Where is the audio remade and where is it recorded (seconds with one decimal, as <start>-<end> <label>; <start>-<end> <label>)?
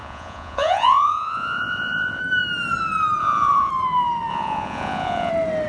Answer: 0.0-2.2 remade; 2.2-3.2 recorded; 3.2-3.7 remade; 3.7-4.3 recorded; 4.3-5.3 remade; 5.3-5.7 recorded